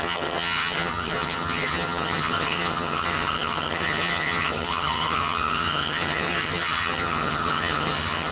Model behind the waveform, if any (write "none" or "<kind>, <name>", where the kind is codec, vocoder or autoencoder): vocoder, HiFi-GAN